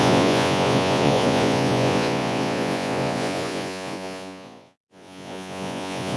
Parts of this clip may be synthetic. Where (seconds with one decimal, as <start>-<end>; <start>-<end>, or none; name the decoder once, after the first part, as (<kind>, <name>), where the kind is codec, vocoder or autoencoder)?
0.0-6.2 (vocoder, Vocos)